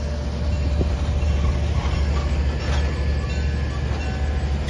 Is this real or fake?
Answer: real